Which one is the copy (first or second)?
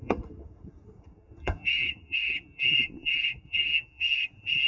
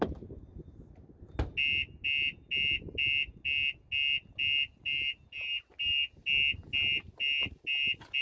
first